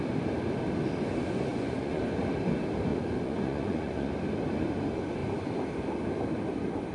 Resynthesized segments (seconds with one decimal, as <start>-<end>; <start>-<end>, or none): 1.5-2.0; 2.9-4.1